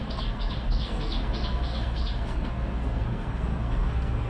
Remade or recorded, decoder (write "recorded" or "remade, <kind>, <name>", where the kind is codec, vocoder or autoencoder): remade, codec, SNAC